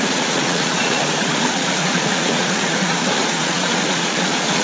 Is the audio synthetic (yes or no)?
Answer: yes